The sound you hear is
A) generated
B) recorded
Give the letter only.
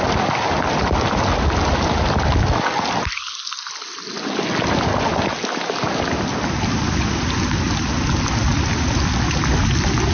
B